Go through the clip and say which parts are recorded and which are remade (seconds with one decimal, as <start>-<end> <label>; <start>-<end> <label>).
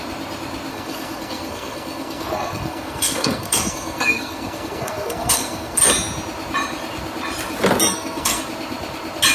0.0-0.7 recorded; 0.7-5.8 remade; 5.8-7.8 recorded; 7.8-8.4 remade; 8.4-9.3 recorded